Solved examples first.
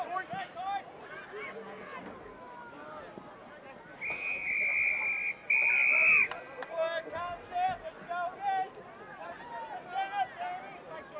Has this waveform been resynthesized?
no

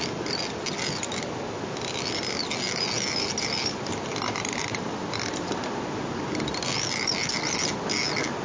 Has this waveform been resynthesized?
no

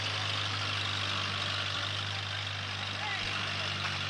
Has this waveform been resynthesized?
no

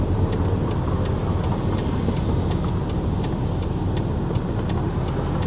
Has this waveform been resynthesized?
no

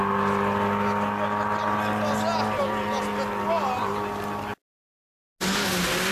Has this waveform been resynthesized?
no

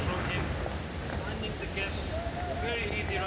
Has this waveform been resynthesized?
no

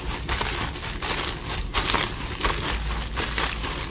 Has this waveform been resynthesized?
no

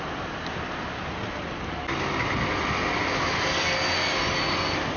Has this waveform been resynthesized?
no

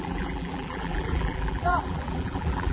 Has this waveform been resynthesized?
yes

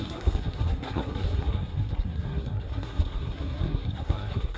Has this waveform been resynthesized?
yes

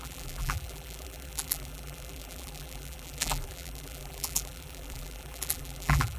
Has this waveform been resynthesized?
yes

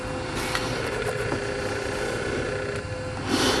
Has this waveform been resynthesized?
no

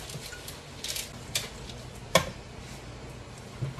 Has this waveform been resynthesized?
no